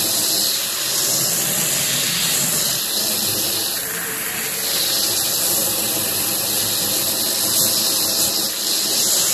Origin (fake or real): real